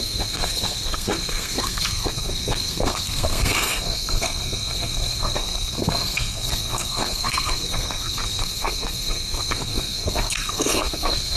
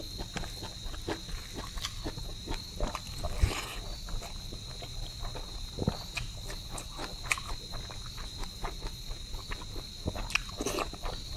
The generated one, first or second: first